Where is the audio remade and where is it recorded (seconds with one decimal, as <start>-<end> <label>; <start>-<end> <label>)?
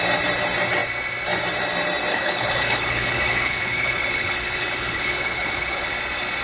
0.0-2.1 recorded; 2.1-5.9 remade; 5.9-6.4 recorded